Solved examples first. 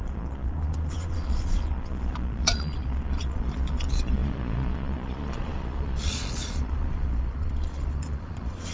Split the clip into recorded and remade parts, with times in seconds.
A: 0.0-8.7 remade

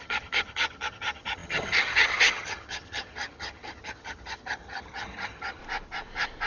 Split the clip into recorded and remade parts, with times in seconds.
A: 0.0-5.6 remade; 5.6-6.5 recorded

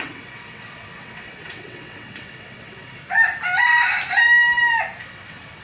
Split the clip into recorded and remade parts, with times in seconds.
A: 0.0-3.0 remade; 3.0-5.0 recorded; 5.0-5.6 remade

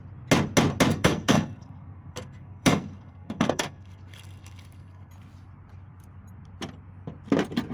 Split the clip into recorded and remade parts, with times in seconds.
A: 0.0-0.9 recorded; 0.9-5.1 remade; 5.1-7.7 recorded

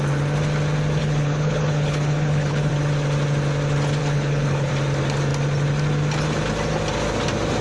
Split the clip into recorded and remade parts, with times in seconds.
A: 0.0-1.0 recorded; 1.0-2.7 remade; 2.7-4.0 recorded; 4.0-4.7 remade; 4.7-7.6 recorded

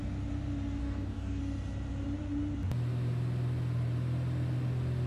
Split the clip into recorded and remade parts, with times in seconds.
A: 0.0-0.8 recorded; 0.8-1.4 remade; 1.4-5.1 recorded

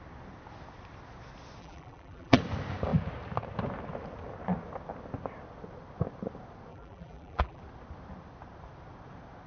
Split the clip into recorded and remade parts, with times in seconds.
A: 0.0-1.6 recorded; 1.6-2.4 remade; 2.4-6.7 recorded; 6.7-7.6 remade; 7.6-9.5 recorded

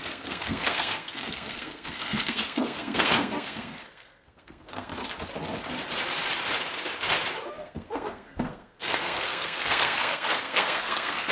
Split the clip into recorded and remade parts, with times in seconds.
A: 0.0-4.9 remade; 4.9-7.5 recorded; 7.5-11.3 remade